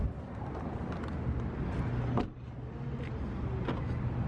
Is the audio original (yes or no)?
yes